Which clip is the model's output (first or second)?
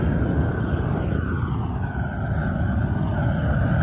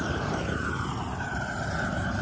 second